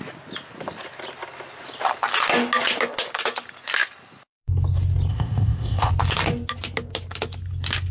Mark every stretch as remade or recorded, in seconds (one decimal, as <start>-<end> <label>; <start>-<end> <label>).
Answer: 0.0-5.1 recorded; 5.1-5.9 remade; 5.9-7.9 recorded